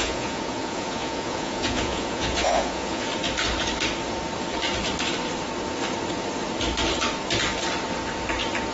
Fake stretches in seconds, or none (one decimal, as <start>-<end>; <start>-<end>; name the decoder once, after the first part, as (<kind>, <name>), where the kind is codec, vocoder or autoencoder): 0.0-3.1 (vocoder, Vocos)